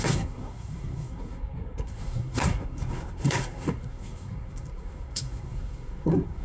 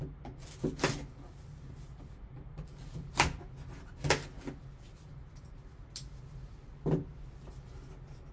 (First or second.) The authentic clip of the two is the second